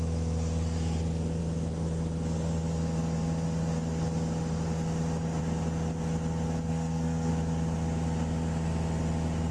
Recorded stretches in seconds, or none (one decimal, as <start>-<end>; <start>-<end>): 0.0-6.7; 7.3-9.5